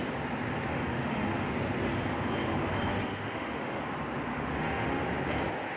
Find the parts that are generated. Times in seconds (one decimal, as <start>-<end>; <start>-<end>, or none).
0.7-1.5; 2.9-3.8; 4.3-5.0